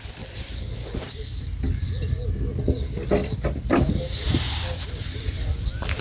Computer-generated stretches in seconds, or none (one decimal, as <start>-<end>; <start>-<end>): none